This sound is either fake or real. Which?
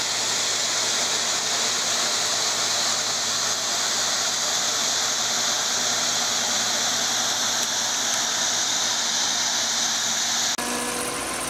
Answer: real